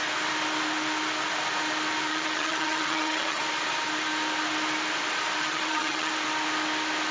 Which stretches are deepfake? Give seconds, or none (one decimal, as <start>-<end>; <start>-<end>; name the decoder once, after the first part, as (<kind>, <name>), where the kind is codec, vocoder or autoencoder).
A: 2.1-3.4 (vocoder, HiFi-GAN); 5.4-6.1